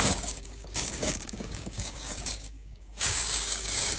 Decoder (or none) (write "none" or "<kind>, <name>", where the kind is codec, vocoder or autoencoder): codec, DAC